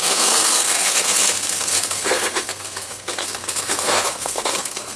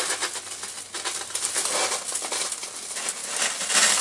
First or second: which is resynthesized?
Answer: first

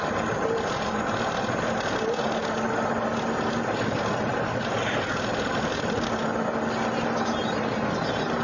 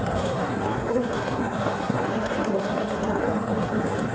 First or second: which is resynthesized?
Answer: second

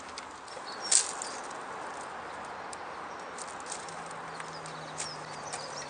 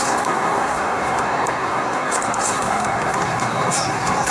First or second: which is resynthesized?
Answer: second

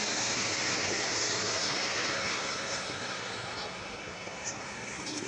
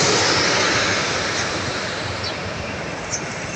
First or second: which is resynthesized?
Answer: first